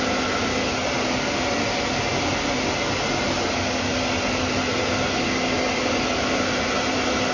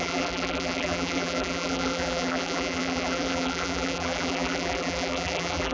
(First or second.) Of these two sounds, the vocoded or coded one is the second